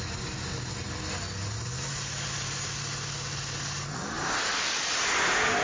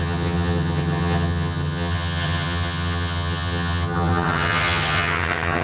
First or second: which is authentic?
first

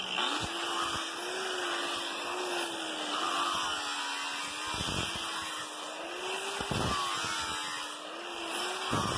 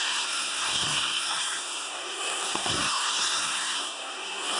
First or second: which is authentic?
first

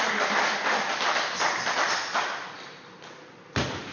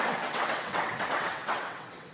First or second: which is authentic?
first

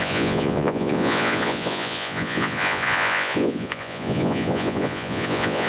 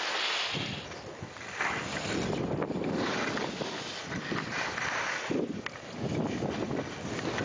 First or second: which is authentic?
second